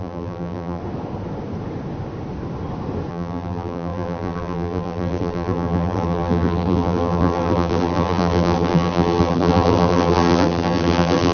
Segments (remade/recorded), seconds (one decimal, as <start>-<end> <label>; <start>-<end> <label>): 0.0-0.8 remade; 0.8-3.1 recorded; 3.1-11.3 remade